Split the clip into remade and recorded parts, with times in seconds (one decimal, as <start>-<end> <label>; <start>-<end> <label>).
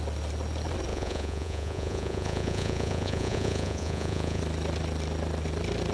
0.0-0.9 recorded; 0.9-4.4 remade; 4.4-5.9 recorded